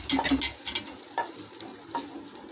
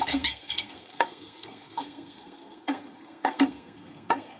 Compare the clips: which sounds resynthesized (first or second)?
second